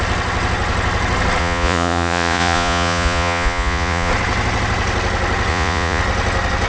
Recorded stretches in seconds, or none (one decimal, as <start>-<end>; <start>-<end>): 0.0-1.4; 4.1-5.5; 6.0-6.7